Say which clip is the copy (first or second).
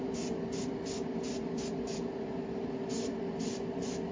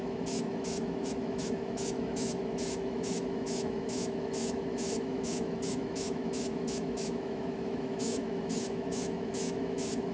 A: second